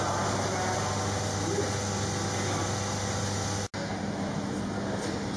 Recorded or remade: recorded